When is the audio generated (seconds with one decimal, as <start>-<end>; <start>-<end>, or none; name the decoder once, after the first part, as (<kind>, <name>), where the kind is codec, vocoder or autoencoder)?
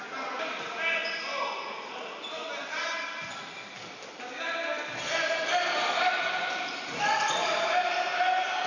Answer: none